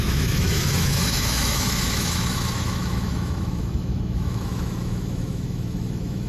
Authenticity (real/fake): fake